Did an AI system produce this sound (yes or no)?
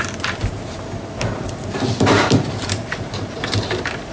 yes